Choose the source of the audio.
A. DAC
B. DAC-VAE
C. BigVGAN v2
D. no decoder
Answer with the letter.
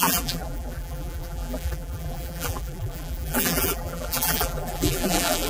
C